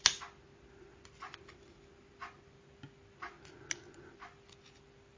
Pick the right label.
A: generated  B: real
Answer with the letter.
B